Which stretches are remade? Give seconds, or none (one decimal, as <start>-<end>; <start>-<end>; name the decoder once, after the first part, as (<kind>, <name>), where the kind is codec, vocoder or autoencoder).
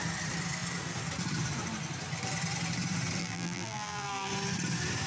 3.2-4.3 (vocoder, BigVGAN v2)